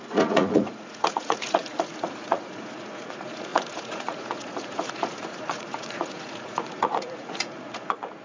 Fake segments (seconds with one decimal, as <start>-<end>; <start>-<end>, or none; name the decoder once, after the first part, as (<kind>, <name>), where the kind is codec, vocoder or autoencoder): 0.0-8.2 (vocoder, Vocos)